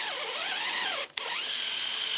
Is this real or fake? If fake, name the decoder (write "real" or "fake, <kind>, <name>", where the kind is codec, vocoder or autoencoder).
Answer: real